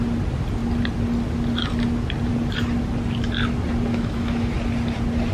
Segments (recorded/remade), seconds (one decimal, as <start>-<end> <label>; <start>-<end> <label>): 0.0-3.9 recorded; 3.9-4.5 remade; 4.5-5.3 recorded